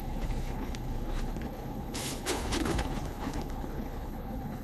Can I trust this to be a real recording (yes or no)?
no